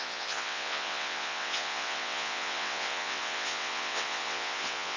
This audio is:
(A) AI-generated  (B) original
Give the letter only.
A